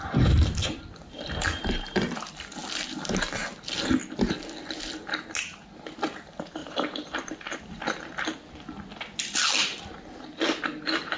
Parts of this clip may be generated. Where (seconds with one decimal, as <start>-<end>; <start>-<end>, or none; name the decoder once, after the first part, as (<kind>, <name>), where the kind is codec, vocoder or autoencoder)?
6.6-7.3 (vocoder, BigVGAN v2)